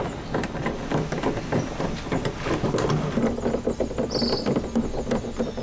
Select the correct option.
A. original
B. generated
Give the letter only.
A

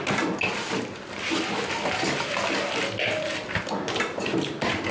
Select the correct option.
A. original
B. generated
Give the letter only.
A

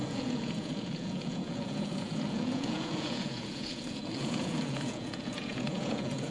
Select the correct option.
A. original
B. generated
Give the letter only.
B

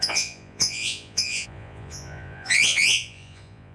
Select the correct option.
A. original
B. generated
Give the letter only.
B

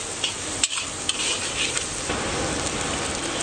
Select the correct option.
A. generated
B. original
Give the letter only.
B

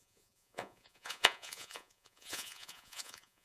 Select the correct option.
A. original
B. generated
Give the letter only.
B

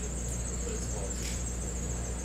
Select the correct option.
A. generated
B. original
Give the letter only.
B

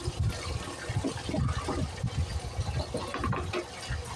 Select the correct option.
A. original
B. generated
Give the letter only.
A